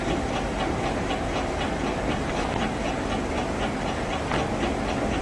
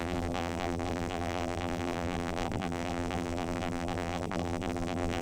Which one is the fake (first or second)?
second